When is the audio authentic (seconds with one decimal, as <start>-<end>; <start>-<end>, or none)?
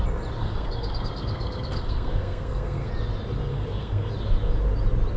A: 0.0-0.4; 2.9-3.5; 4.1-5.2